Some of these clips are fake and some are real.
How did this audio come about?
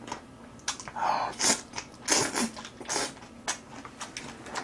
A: real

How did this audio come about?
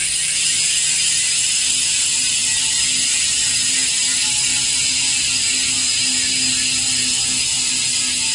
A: real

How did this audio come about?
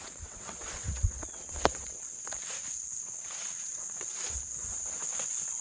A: fake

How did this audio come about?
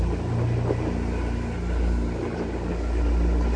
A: real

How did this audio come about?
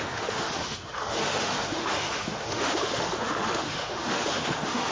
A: fake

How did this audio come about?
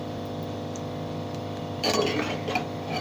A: fake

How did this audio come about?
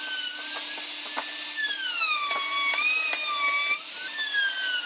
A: real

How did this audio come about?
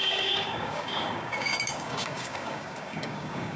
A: fake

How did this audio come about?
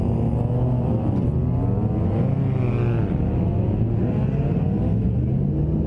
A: real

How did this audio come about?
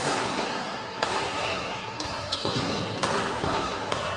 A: fake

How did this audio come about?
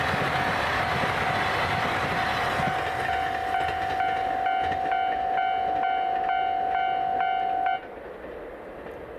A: real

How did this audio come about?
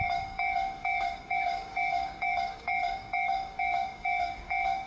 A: fake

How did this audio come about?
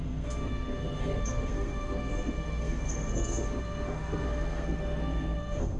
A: fake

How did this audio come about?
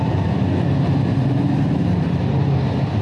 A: real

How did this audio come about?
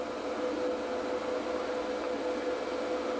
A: real